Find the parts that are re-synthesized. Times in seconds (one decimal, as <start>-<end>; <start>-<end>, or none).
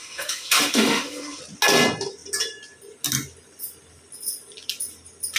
0.0-1.4